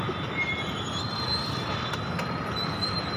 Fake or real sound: real